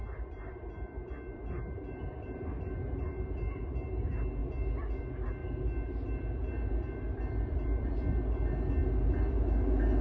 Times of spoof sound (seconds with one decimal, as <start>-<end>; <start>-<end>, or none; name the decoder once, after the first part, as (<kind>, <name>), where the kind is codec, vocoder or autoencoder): 0.0-3.9 (vocoder, BigVGAN v2); 4.4-5.0; 5.4-8.2; 8.8-10.0